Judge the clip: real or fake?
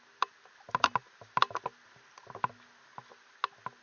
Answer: real